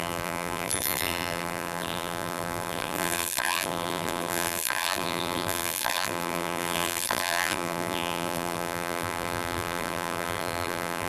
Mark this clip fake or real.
fake